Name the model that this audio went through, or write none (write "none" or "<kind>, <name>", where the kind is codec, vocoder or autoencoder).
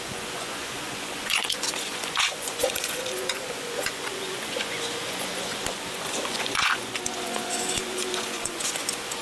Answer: vocoder, Vocos